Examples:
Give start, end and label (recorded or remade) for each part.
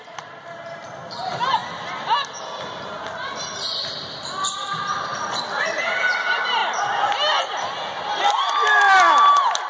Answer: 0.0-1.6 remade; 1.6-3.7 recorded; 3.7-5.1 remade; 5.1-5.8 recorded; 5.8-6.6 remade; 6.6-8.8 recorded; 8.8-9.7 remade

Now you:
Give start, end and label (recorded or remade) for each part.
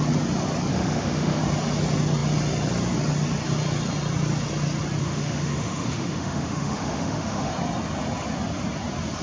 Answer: 0.0-0.7 recorded; 0.7-1.4 remade; 1.4-5.0 recorded; 5.0-7.5 remade; 7.5-9.2 recorded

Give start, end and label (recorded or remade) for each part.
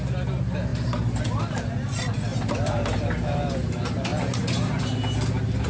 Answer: 0.0-0.7 recorded; 0.7-1.2 remade; 1.2-4.1 recorded; 4.1-4.8 remade; 4.8-5.7 recorded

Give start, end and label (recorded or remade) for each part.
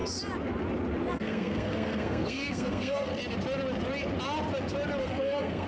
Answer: 0.0-1.1 recorded; 1.1-3.1 remade; 3.1-5.0 recorded; 5.0-5.7 remade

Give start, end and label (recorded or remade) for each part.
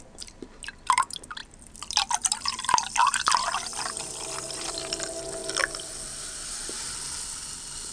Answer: 0.0-1.4 recorded; 1.4-4.7 remade; 4.7-7.9 recorded